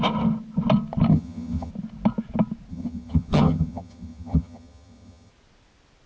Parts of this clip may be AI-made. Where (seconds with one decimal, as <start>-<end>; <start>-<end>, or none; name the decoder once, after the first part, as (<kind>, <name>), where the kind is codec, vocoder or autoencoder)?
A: 1.1-1.7 (vocoder, HiFi-GAN); 2.7-5.3